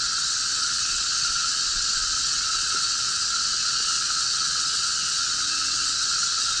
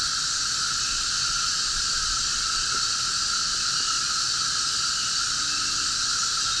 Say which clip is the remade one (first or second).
first